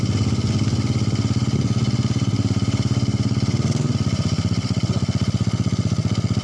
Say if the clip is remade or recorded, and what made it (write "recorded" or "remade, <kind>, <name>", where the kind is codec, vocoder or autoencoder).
recorded